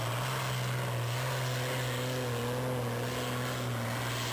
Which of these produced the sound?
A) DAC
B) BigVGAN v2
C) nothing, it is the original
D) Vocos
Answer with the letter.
C